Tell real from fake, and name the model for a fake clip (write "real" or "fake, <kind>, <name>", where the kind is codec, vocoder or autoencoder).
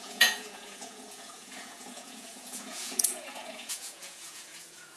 fake, vocoder, Vocos